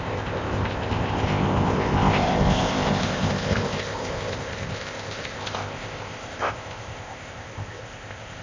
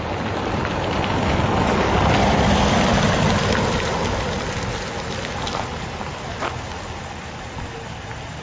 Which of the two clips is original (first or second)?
second